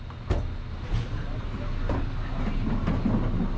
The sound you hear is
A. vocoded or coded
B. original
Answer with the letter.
B